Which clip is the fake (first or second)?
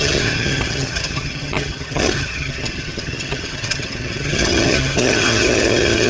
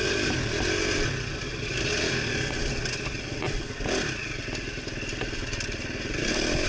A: first